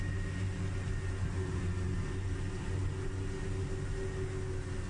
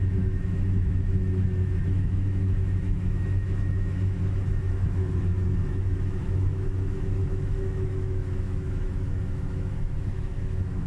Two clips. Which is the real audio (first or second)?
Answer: first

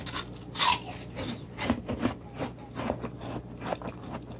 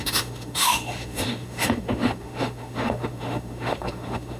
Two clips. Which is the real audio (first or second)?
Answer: first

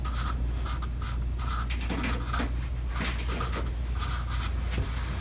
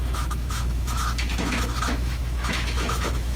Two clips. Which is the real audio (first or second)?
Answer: first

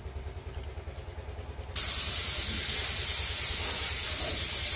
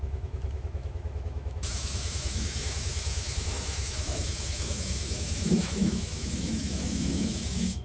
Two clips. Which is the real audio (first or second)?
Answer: first